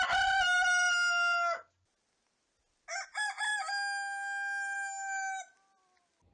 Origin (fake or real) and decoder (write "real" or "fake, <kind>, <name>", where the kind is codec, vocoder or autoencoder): real